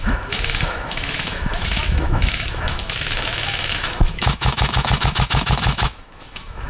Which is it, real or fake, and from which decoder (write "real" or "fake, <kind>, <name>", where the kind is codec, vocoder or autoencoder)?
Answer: fake, autoencoder, DAC-VAE